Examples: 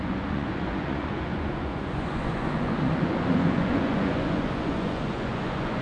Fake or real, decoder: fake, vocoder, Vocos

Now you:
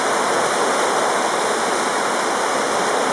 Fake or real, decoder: real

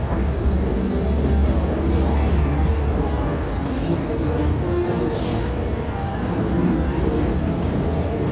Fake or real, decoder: fake, codec, DAC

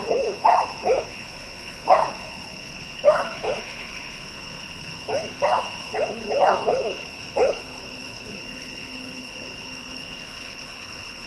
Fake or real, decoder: fake, codec, HILCodec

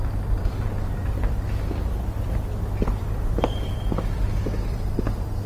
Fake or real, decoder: fake, vocoder, BigVGAN v2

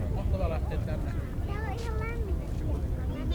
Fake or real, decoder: real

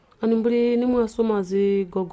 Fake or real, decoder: real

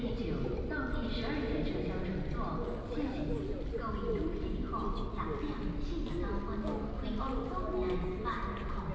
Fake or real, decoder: real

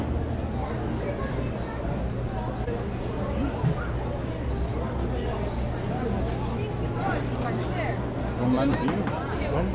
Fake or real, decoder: real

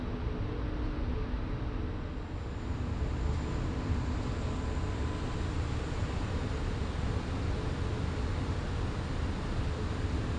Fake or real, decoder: real